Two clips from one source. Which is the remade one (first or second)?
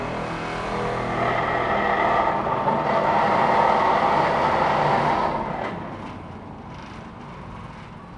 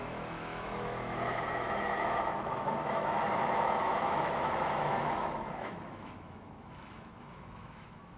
second